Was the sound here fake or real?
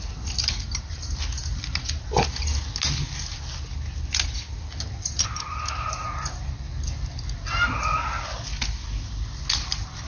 real